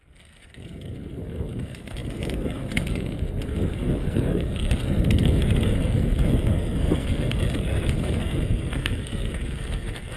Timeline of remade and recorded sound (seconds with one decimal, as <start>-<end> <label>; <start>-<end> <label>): 0.0-10.2 remade